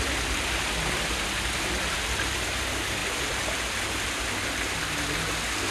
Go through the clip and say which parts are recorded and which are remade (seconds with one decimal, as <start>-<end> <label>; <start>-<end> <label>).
0.0-5.7 recorded